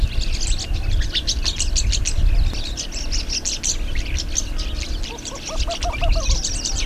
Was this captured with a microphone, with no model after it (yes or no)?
yes